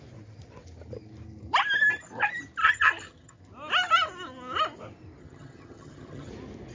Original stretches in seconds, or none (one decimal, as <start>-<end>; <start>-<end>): 0.0-2.6; 3.4-5.2; 6.3-6.7